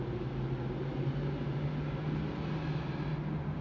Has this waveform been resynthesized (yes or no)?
no